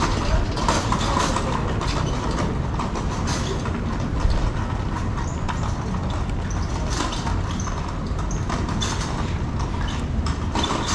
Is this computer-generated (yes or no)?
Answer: no